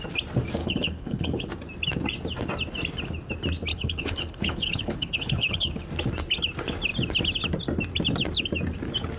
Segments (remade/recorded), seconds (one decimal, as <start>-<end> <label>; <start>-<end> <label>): 0.0-0.6 recorded; 0.6-1.5 remade; 1.5-3.7 recorded; 3.7-5.8 remade; 5.8-9.2 recorded